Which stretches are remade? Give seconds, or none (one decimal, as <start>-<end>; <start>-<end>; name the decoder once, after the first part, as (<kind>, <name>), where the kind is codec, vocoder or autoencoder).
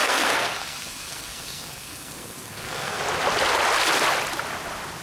0.0-3.0 (codec, SNAC)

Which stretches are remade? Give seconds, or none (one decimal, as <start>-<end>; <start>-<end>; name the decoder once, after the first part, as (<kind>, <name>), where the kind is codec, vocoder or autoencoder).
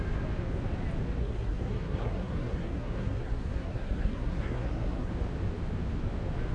1.2-5.1 (codec, SNAC)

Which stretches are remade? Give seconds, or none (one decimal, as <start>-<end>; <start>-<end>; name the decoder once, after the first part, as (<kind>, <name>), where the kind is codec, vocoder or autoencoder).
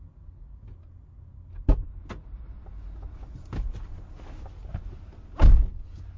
none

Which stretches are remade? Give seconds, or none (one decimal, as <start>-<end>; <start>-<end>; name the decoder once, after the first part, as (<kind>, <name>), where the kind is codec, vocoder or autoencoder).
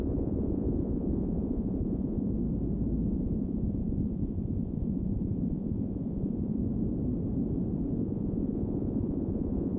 0.0-2.3 (vocoder, Vocos); 3.1-6.6; 8.0-9.8